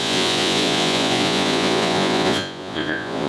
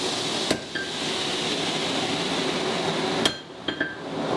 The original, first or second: second